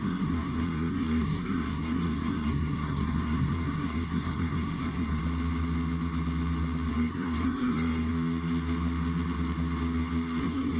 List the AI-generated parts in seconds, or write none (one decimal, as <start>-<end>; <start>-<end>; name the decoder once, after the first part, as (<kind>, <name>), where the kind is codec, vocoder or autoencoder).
0.0-5.2 (codec, SNAC); 6.9-8.1; 10.4-10.8